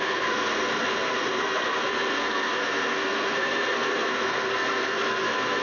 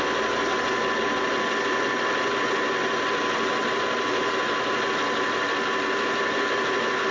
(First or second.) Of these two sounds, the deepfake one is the first